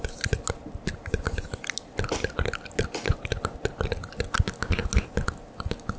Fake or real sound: real